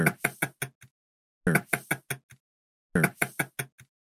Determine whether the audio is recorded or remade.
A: recorded